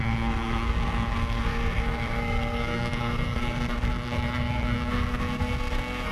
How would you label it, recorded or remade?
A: remade